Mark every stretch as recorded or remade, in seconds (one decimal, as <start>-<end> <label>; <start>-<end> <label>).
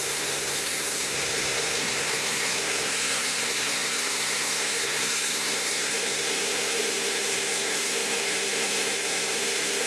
0.0-9.9 remade